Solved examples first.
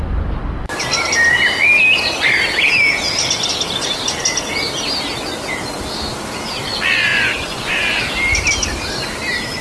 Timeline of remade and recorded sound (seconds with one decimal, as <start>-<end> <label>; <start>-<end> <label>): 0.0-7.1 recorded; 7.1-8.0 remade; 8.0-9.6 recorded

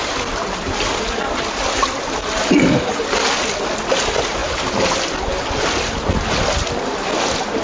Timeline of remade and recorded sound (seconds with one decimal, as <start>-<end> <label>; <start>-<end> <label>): 0.0-7.6 recorded

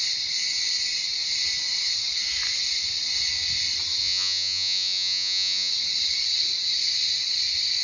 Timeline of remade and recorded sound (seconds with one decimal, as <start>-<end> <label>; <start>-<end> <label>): 0.0-4.0 recorded; 4.0-5.7 remade; 5.7-7.8 recorded

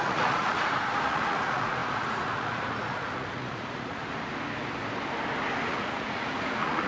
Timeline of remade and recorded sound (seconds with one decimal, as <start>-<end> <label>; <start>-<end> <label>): 0.0-4.0 remade; 4.0-5.7 recorded; 5.7-6.9 remade